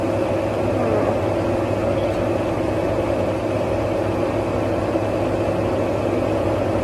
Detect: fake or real real